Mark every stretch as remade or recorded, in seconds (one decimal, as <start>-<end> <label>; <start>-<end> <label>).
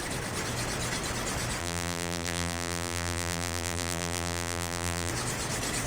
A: 0.0-1.6 recorded; 1.6-5.1 remade; 5.1-5.9 recorded